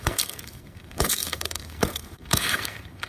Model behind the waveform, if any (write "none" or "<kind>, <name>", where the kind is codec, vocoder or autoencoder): codec, SNAC